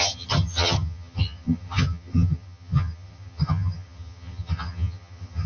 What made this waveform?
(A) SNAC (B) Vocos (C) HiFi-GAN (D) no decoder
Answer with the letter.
C